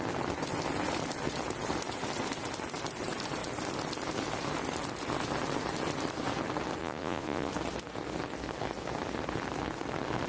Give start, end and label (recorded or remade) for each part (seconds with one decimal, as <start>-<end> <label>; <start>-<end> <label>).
0.0-6.8 recorded; 6.8-7.5 remade; 7.5-10.3 recorded